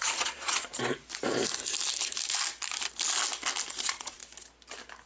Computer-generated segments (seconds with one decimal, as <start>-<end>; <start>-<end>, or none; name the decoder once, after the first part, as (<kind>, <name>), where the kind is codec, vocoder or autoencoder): 0.0-0.7 (vocoder, Vocos); 3.8-4.2